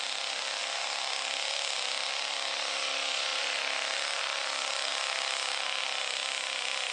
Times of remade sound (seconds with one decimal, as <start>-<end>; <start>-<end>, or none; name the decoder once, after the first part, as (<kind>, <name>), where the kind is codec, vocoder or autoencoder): 0.0-4.9 (vocoder, BigVGAN v2); 5.8-6.2